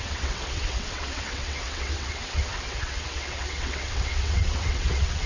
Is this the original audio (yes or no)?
no